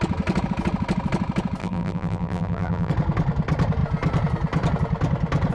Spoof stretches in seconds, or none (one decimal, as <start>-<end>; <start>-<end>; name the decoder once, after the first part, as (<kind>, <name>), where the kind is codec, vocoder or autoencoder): 1.6-2.9 (vocoder, BigVGAN v2)